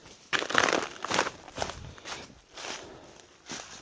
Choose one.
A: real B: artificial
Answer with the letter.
B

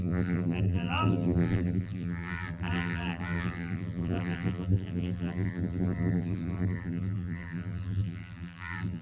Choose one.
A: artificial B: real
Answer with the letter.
A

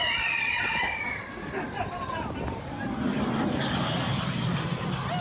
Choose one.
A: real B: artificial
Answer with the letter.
A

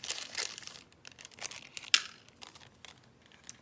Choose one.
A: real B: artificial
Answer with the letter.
A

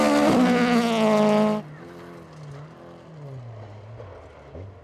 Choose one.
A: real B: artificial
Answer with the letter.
A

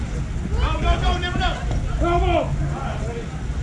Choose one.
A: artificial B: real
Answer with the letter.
B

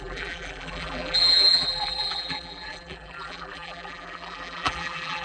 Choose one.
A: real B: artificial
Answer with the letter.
B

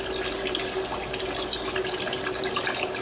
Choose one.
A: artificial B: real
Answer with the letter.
B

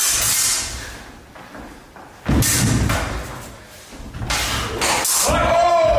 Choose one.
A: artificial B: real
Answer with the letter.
B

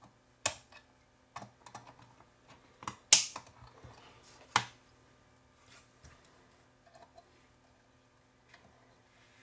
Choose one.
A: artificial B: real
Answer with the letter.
B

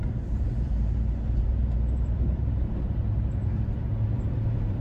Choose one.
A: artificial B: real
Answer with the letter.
A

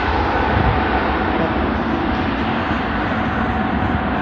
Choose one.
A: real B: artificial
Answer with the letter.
B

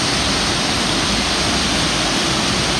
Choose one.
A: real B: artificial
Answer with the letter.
A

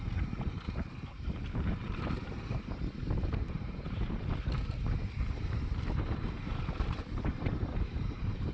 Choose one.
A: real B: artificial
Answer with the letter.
B